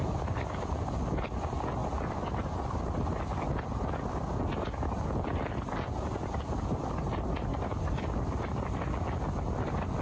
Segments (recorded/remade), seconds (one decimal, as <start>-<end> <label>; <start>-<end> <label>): 0.0-10.0 recorded